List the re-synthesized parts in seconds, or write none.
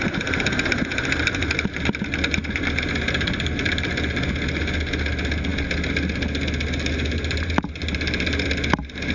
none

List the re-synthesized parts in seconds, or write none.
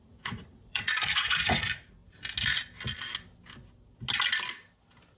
0.0-2.0 (vocoder, Vocos)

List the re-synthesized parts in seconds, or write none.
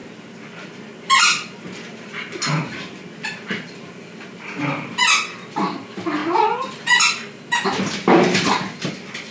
0.0-4.3 (vocoder, BigVGAN v2)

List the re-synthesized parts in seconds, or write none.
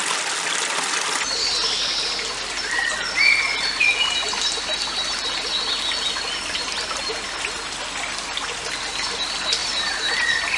9.6-10.1 (vocoder, BigVGAN v2)